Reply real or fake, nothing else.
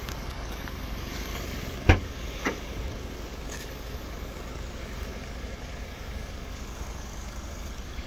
fake